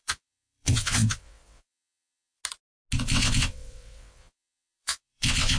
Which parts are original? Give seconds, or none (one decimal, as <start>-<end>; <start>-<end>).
2.4-3.0